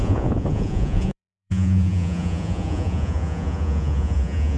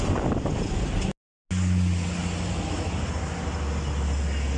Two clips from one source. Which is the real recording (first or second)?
second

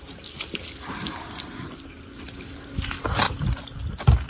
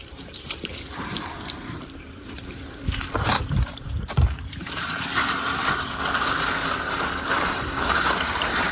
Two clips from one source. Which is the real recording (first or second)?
first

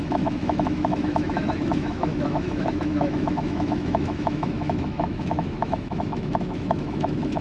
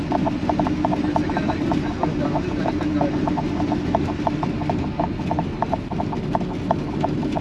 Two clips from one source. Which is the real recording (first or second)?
second